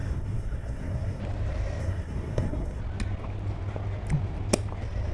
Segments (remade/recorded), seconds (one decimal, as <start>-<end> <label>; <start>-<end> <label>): 0.0-1.2 remade; 1.2-1.8 recorded; 1.8-2.8 remade; 2.8-5.1 recorded